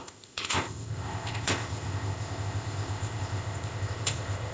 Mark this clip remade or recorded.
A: remade